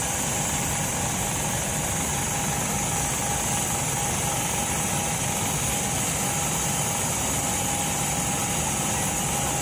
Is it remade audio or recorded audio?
recorded